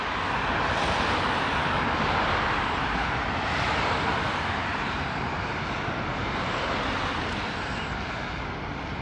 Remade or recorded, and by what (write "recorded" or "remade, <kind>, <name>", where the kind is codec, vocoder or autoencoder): recorded